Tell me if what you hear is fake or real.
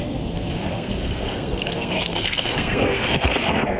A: fake